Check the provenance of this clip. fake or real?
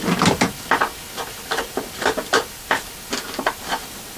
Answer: fake